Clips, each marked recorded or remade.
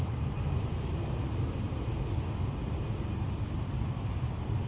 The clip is recorded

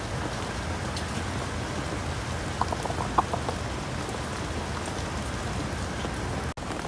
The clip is recorded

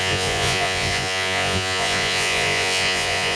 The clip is remade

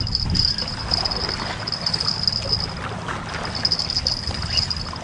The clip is recorded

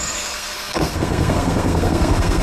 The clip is remade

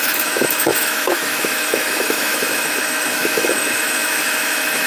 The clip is remade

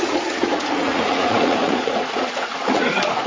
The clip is remade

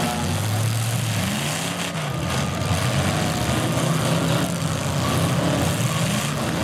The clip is recorded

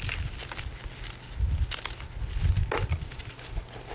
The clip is recorded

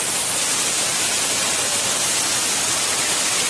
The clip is recorded